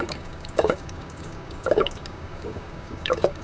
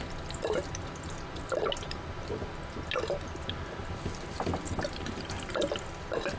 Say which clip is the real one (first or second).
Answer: second